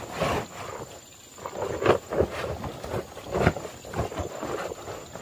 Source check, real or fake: real